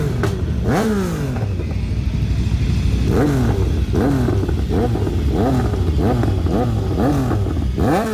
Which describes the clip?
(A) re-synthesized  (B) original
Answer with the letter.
B